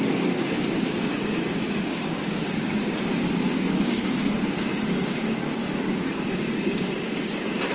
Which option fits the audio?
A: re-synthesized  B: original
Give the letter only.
A